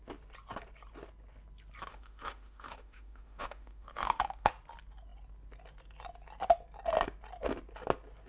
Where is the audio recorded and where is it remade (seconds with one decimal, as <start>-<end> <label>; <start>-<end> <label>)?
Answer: 0.0-1.9 recorded; 1.9-4.5 remade; 4.5-8.3 recorded